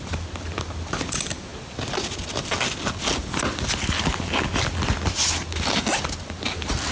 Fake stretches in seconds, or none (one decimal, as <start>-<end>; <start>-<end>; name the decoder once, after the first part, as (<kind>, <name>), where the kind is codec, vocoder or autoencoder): none